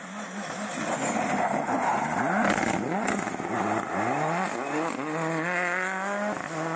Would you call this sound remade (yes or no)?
no